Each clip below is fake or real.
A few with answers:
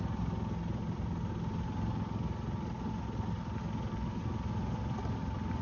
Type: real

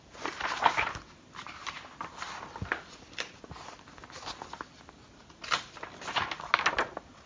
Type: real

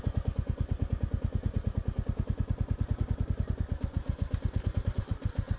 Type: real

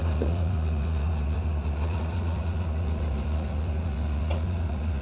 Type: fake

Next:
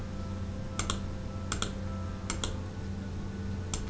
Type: real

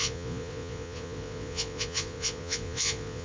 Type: fake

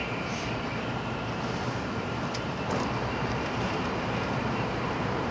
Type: fake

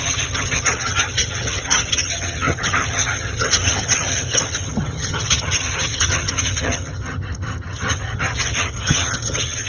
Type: fake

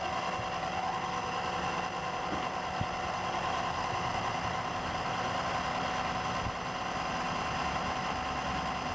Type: real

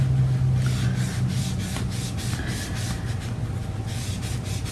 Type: real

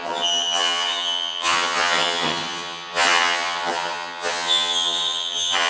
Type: fake